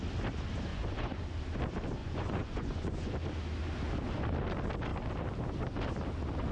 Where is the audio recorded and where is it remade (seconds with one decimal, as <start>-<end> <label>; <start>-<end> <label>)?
0.0-0.7 recorded; 0.7-1.2 remade; 1.2-2.0 recorded; 2.0-3.1 remade; 3.1-6.5 recorded